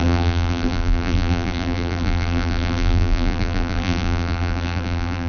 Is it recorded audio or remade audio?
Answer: remade